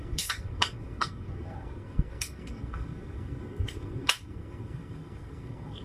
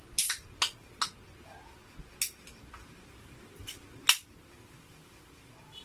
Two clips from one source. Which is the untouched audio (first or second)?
second